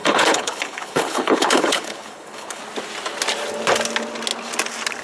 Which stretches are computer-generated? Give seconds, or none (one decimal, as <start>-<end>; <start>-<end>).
0.0-2.6